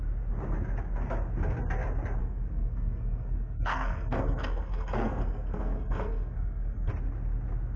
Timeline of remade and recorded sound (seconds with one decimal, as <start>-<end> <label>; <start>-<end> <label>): 0.0-2.2 recorded; 2.2-6.9 remade; 6.9-7.8 recorded

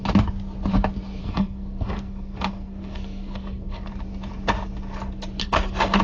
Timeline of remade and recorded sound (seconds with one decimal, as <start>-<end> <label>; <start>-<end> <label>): 0.0-1.2 recorded; 1.2-3.9 remade; 3.9-5.4 recorded; 5.4-6.0 remade